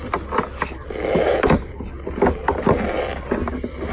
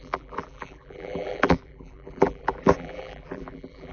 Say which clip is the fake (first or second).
second